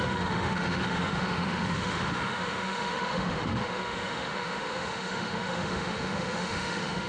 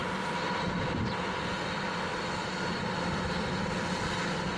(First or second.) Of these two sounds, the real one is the second